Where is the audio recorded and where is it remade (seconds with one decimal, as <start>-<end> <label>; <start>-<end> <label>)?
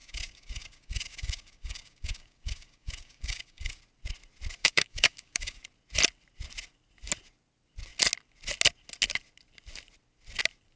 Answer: 0.0-3.8 remade; 3.8-4.6 recorded; 4.6-5.6 remade; 5.6-10.8 recorded